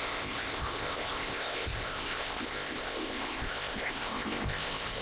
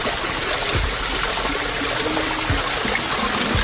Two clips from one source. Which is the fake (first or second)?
first